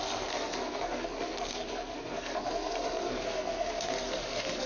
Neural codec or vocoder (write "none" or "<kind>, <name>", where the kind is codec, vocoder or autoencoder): codec, SNAC